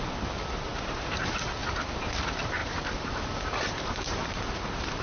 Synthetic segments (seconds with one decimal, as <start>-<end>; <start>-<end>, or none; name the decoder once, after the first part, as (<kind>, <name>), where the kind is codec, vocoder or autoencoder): 0.7-1.2 (vocoder, BigVGAN v2); 2.6-4.0